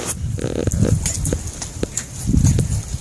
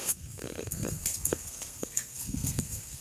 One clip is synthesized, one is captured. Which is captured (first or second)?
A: first